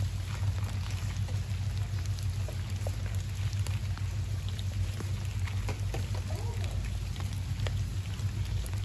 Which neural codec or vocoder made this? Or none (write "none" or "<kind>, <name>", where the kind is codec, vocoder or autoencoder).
none